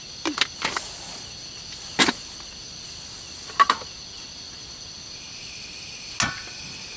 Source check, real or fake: real